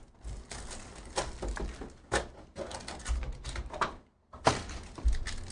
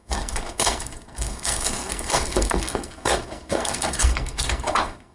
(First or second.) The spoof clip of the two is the second